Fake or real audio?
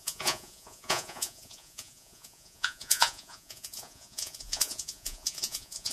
fake